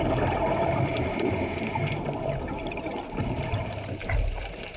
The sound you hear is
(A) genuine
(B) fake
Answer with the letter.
B